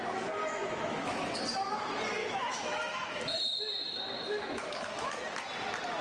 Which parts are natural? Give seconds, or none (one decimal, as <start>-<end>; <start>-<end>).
0.0-0.4; 1.4-2.2; 3.2-4.3; 5.2-6.0